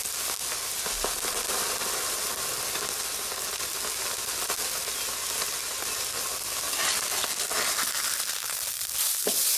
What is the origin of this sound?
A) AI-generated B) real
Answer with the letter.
B